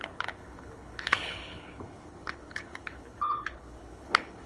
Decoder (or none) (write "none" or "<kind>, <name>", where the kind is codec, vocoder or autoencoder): codec, HILCodec